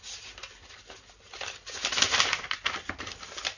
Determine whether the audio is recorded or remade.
recorded